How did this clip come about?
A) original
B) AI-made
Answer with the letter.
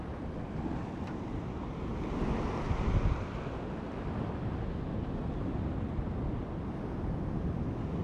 A